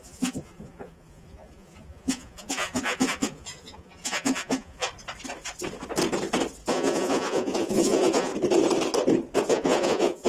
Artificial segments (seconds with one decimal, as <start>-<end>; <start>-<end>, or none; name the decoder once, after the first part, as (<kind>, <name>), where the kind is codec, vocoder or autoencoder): 0.0-4.9 (vocoder, Vocos); 6.7-8.3; 9.5-10.3